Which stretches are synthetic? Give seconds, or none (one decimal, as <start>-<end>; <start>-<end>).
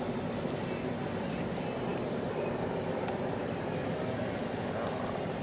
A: 0.0-5.4